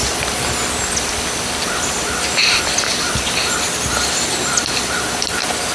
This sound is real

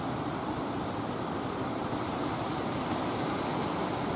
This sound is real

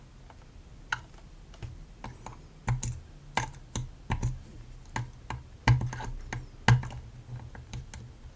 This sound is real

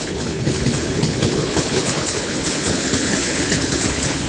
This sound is fake